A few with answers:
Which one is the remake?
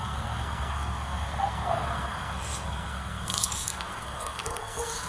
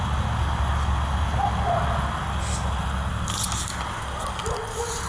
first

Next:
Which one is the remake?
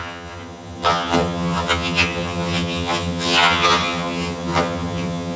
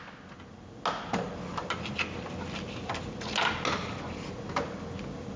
first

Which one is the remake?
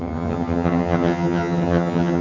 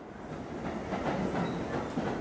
first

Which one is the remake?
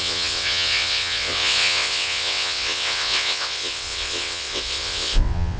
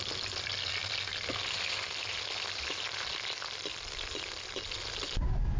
first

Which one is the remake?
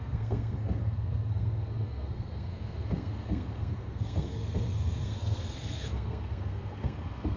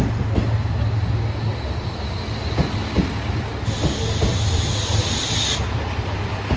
first